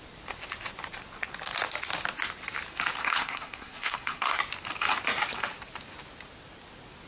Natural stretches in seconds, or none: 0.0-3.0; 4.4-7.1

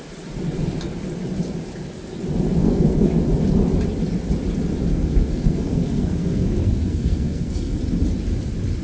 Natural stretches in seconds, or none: 0.0-2.6; 3.1-4.9; 7.8-8.8

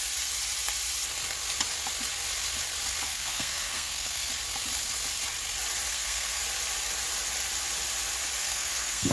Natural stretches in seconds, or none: 0.0-3.1; 4.3-5.9; 6.4-8.4